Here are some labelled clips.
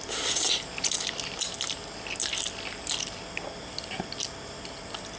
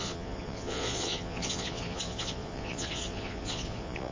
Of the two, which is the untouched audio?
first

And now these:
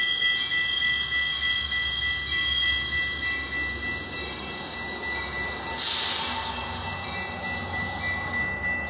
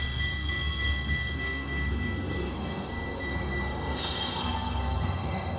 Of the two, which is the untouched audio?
first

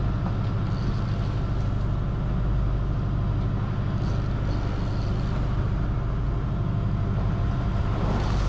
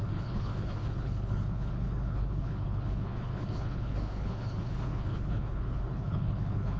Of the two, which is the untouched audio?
first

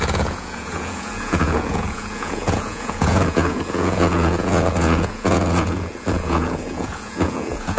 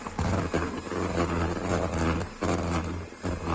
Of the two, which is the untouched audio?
second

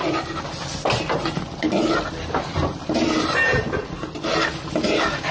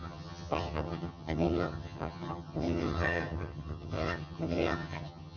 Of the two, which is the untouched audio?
first